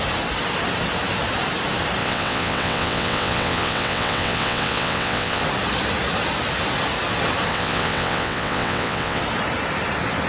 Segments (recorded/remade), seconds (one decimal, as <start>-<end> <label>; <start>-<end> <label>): 0.0-2.0 recorded; 2.0-5.4 remade; 5.4-7.5 recorded; 7.5-9.2 remade; 9.2-10.3 recorded